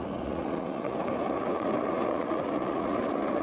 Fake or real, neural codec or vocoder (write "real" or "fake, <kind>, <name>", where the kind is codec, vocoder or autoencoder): fake, vocoder, Vocos